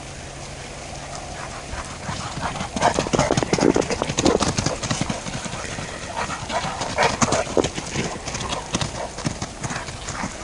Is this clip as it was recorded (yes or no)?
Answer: yes